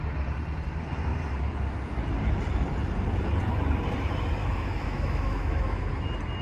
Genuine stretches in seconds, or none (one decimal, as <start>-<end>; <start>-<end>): 0.0-4.4; 5.9-6.4